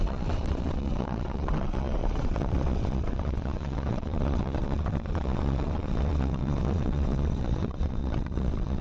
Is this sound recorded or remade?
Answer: remade